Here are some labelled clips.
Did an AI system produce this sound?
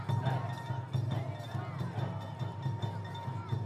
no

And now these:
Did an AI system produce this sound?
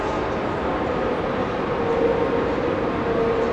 no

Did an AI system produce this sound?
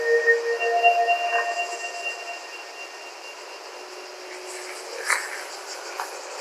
no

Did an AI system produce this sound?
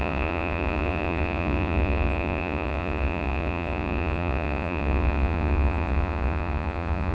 yes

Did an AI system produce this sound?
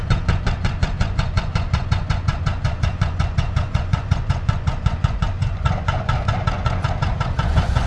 yes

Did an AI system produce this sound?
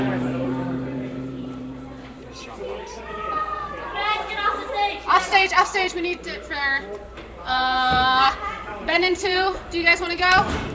yes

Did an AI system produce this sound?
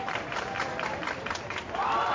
no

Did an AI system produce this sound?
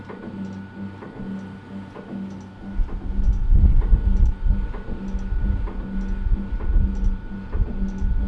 no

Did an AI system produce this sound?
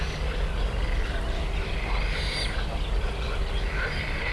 no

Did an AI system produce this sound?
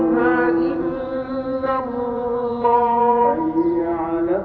yes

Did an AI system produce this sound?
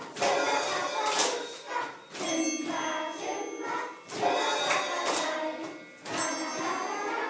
no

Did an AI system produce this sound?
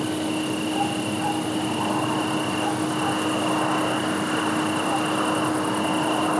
no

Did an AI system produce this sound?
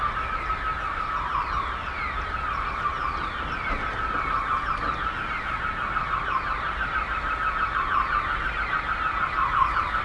no